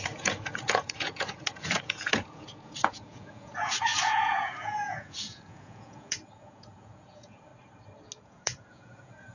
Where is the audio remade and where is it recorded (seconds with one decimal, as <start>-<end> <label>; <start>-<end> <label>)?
0.0-7.5 remade; 7.5-8.2 recorded; 8.2-9.3 remade